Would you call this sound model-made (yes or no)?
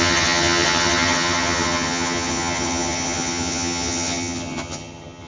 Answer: yes